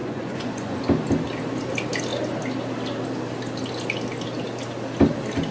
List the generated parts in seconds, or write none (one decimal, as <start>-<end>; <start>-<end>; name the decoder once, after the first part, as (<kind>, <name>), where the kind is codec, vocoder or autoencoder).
0.0-0.8 (vocoder, Vocos)